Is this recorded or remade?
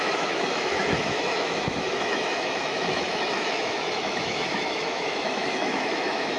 remade